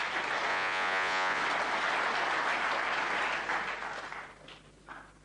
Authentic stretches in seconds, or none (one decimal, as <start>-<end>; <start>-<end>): 0.0-0.5; 1.4-5.2